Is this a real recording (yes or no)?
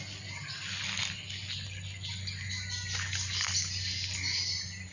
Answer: yes